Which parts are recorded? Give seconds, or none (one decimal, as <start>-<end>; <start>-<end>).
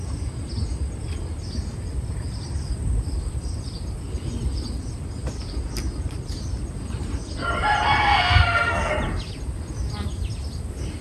0.0-8.0; 8.9-11.0